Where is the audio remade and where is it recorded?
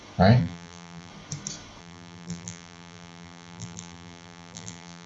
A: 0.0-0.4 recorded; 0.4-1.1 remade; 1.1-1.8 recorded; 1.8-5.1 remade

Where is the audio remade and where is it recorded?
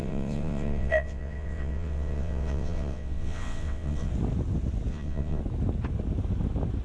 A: 0.0-4.1 remade; 4.1-4.9 recorded; 4.9-5.4 remade; 5.4-6.8 recorded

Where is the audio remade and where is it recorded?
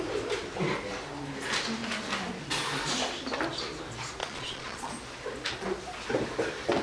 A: 0.0-4.2 recorded; 4.2-4.9 remade; 4.9-6.8 recorded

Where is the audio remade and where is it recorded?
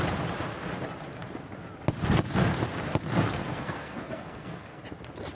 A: 0.0-3.4 recorded; 3.4-4.8 remade; 4.8-5.3 recorded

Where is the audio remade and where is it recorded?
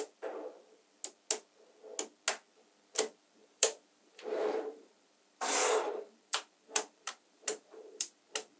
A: 0.0-3.4 recorded; 3.4-8.2 remade; 8.2-8.6 recorded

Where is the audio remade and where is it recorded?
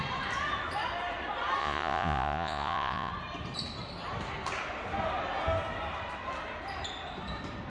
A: 0.0-1.6 recorded; 1.6-3.1 remade; 3.1-7.7 recorded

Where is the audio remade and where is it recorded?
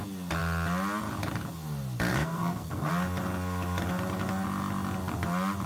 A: 0.0-2.1 recorded; 2.1-2.9 remade; 2.9-5.7 recorded